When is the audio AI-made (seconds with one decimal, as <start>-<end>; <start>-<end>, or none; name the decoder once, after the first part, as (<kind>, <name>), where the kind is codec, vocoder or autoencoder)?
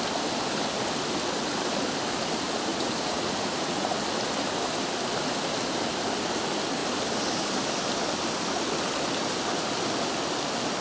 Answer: 2.7-4.0 (vocoder, Vocos)